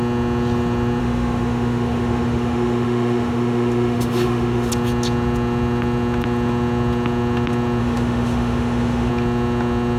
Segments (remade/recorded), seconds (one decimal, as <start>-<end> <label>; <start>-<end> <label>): 0.0-1.0 recorded; 1.0-4.7 remade; 4.7-7.8 recorded; 7.8-9.1 remade; 9.1-10.0 recorded